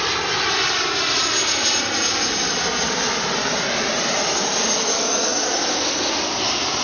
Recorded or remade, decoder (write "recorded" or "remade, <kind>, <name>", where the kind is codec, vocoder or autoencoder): recorded